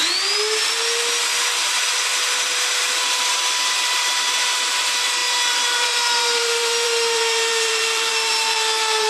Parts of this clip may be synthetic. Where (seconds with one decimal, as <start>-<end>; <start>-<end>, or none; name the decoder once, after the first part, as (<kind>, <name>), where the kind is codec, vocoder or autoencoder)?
1.6-9.1 (vocoder, BigVGAN v2)